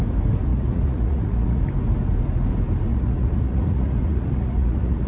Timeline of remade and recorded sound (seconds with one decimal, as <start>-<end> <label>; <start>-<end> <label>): 0.0-0.5 recorded; 0.5-1.6 remade; 1.6-2.9 recorded; 2.9-5.1 remade